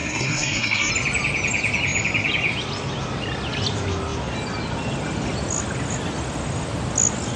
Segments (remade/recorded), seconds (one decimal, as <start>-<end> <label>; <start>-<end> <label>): 0.0-0.9 remade; 0.9-7.4 recorded